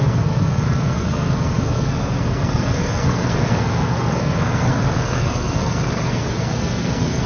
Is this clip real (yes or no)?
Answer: no